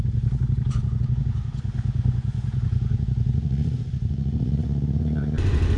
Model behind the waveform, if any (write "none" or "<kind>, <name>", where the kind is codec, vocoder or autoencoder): vocoder, Vocos